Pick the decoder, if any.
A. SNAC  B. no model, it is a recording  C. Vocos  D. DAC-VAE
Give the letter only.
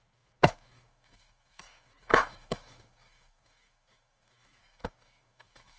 D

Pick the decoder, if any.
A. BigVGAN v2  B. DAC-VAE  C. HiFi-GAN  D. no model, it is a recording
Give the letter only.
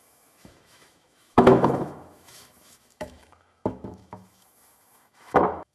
B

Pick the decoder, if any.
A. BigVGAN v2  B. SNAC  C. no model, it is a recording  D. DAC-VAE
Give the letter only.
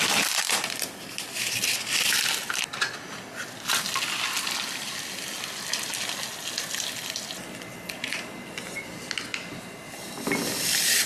C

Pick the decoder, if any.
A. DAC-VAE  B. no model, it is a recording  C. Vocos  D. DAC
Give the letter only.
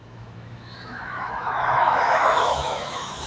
A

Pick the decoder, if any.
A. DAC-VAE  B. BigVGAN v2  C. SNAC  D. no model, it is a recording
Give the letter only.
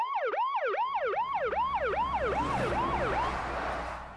D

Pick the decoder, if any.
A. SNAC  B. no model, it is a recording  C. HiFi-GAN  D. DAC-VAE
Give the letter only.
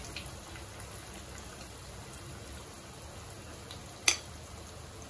B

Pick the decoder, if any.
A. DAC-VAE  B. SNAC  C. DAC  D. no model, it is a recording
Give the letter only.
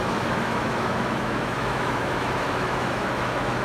A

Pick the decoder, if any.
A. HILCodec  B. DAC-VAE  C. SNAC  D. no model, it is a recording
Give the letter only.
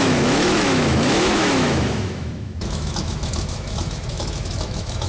B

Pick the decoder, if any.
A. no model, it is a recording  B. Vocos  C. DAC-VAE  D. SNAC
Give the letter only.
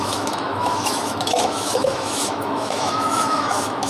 C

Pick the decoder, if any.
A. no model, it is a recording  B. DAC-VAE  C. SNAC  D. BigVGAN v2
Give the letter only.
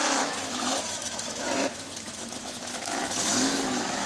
B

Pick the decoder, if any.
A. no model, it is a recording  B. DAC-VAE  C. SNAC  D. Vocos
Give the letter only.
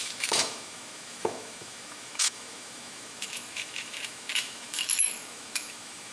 B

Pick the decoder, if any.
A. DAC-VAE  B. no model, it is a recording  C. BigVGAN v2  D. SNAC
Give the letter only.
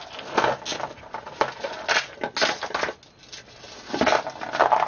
B